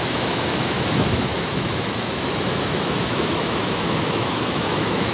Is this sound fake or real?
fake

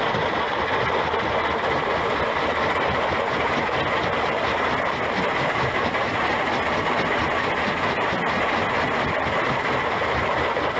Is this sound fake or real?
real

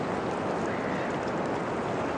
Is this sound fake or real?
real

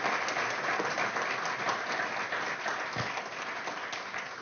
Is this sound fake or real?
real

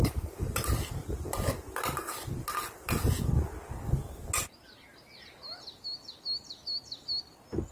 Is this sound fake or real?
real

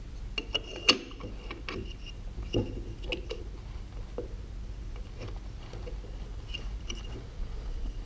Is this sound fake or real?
real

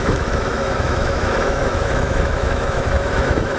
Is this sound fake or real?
fake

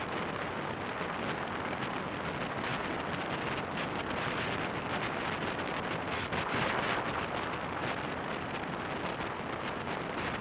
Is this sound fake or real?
real